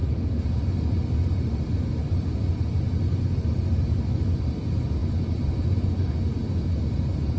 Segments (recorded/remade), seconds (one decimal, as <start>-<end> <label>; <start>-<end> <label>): 0.0-7.4 recorded